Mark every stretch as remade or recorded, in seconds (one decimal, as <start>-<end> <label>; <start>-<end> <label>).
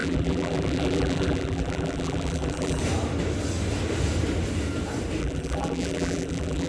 0.0-2.8 remade; 2.8-5.2 recorded; 5.2-6.7 remade